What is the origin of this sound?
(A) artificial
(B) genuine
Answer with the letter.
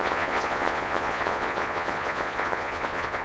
A